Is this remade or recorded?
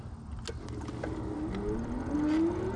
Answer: recorded